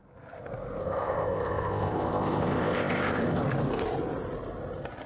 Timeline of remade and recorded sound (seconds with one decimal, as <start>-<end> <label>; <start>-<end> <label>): 0.0-0.8 recorded; 0.8-3.4 remade; 3.4-5.1 recorded

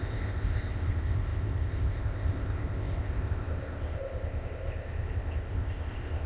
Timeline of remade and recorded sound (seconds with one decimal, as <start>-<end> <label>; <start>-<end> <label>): 0.0-6.3 remade

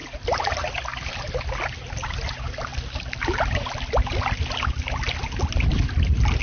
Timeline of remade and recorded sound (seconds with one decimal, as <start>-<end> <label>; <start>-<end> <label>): 0.0-6.4 recorded

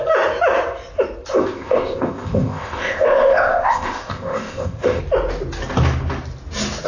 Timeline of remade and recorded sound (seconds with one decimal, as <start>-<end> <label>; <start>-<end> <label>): 0.0-1.3 recorded; 1.3-5.0 remade; 5.0-6.9 recorded

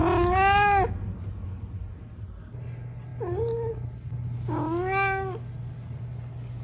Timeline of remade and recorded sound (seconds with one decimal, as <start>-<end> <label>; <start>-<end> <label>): 0.0-6.6 recorded

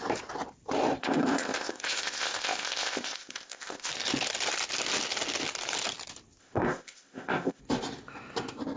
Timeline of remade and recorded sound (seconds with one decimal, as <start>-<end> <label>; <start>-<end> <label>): 0.0-1.0 recorded; 1.0-3.9 remade; 3.9-6.4 recorded; 6.4-7.6 remade; 7.6-8.8 recorded

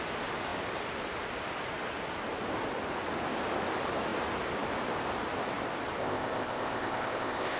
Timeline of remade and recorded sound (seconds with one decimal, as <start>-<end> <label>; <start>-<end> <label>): 0.0-6.0 recorded; 6.0-7.6 remade

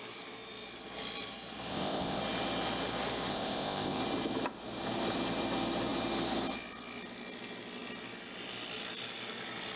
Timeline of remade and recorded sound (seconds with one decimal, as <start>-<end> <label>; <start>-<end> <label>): 0.0-1.7 recorded; 1.7-2.2 remade; 2.2-3.3 recorded; 3.3-4.0 remade; 4.0-9.8 recorded